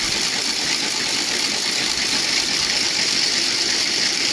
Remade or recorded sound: recorded